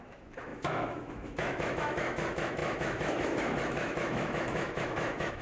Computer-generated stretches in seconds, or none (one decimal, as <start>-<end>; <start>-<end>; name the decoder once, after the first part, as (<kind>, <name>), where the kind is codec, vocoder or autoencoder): 0.0-5.4 (autoencoder, DAC-VAE)